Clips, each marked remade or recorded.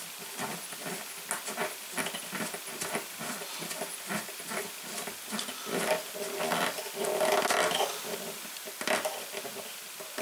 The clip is recorded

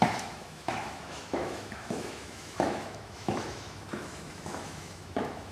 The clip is remade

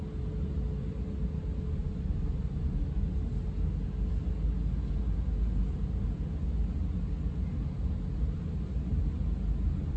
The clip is recorded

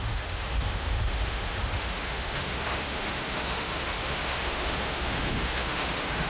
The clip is remade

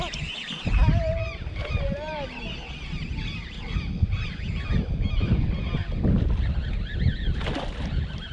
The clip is recorded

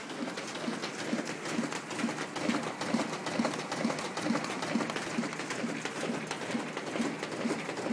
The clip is recorded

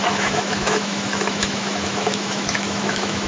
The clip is remade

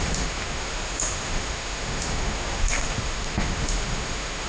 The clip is remade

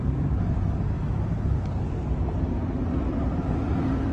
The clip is recorded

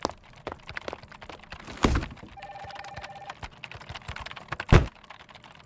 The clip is recorded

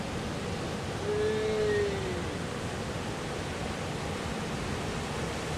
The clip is recorded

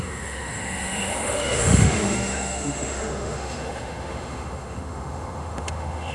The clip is remade